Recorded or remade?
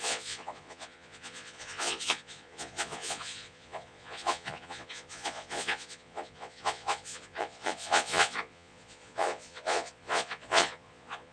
remade